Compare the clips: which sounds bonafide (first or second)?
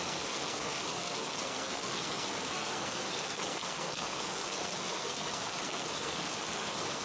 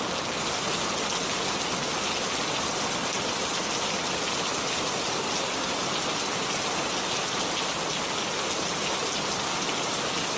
second